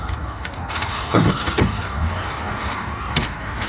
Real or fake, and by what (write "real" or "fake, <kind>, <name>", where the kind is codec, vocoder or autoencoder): fake, codec, DAC